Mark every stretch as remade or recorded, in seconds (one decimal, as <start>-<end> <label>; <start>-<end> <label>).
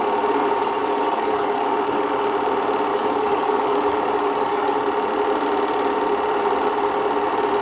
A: 0.0-0.8 recorded; 0.8-2.1 remade; 2.1-2.9 recorded; 2.9-4.7 remade; 4.7-7.6 recorded